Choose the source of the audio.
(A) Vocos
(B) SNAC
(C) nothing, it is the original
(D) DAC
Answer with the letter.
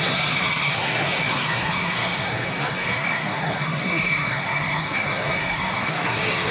B